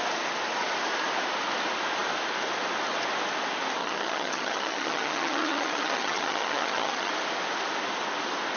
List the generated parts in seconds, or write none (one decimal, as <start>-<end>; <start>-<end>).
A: 3.8-7.1